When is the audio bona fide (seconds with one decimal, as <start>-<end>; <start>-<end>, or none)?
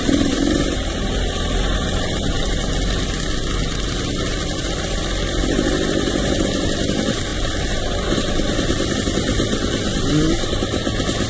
0.0-11.3